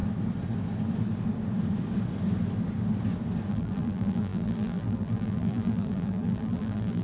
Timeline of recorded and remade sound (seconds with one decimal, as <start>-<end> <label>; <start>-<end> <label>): 0.0-3.5 recorded; 3.5-7.0 remade